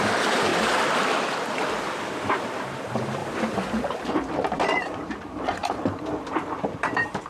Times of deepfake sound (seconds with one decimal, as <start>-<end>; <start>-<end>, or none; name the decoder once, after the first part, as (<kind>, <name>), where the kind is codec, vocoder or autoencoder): 0.0-0.5 (vocoder, BigVGAN v2); 2.8-3.2; 3.8-5.6; 6.5-7.3